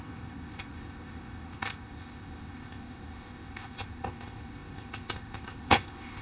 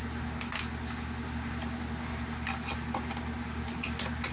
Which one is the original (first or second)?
second